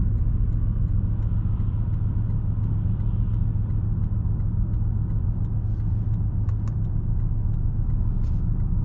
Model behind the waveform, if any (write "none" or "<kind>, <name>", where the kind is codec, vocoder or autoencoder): none